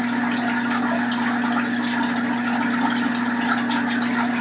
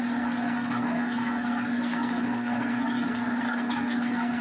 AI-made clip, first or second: second